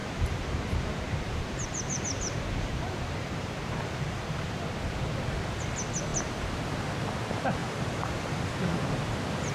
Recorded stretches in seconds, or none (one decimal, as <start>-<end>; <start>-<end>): 4.6-7.6; 8.4-9.5